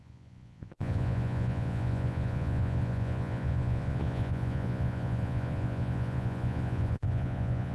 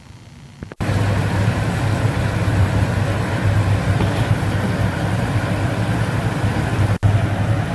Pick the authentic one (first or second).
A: second